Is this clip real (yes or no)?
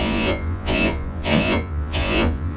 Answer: no